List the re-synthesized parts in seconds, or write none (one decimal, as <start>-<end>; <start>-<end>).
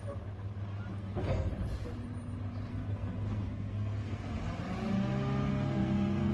0.9-1.5; 2.7-4.4; 5.5-6.3